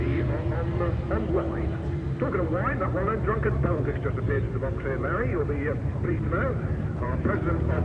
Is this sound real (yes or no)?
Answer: no